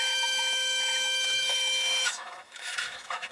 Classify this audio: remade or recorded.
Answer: remade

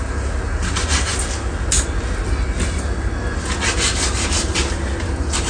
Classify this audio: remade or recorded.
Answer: recorded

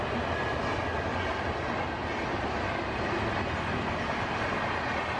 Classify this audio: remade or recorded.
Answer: recorded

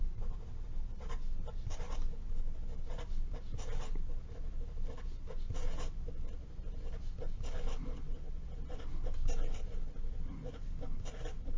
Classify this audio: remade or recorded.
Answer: recorded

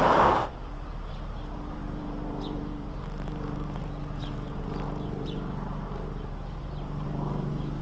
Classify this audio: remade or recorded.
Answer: remade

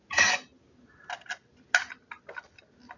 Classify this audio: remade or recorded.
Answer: recorded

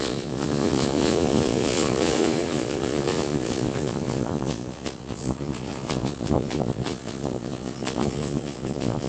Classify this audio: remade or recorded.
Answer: remade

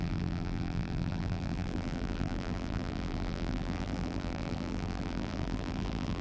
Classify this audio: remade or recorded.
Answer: remade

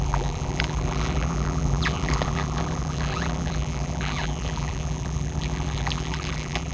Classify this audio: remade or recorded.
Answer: remade